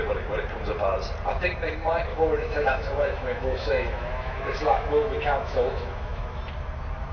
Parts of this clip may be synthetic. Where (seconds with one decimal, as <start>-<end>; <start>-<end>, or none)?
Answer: 2.1-6.4